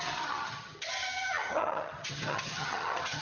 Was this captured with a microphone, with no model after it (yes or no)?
no